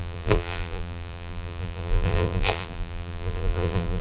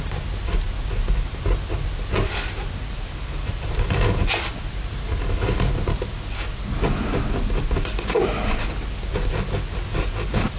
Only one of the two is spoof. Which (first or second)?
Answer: first